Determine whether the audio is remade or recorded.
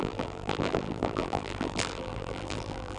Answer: remade